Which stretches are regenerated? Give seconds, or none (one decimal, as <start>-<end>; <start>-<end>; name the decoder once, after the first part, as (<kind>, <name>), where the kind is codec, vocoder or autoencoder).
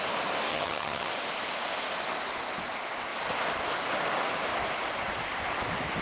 0.5-1.1 (vocoder, HiFi-GAN)